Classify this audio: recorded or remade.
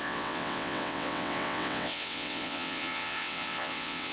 remade